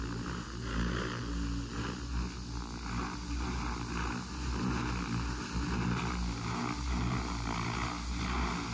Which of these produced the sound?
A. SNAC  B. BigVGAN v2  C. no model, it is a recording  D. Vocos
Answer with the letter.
C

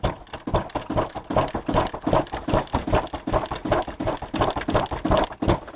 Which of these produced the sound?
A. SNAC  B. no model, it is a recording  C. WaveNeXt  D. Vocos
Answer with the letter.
B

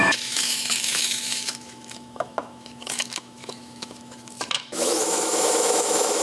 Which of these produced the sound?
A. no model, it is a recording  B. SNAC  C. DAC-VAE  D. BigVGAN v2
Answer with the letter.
C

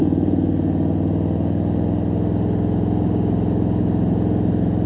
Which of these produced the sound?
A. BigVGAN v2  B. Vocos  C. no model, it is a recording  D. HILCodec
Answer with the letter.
C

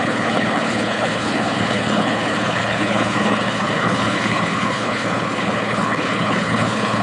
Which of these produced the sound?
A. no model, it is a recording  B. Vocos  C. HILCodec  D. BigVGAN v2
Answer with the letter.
C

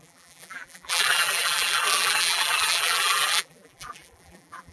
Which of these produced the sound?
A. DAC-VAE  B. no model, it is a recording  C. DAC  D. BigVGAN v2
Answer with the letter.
D